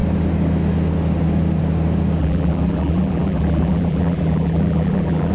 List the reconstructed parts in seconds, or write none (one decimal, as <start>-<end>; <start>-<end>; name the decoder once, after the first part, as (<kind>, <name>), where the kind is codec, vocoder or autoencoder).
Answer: 2.2-5.3 (vocoder, BigVGAN v2)